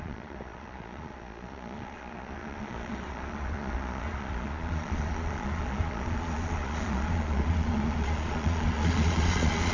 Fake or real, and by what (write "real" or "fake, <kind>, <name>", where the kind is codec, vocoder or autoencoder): fake, vocoder, Vocos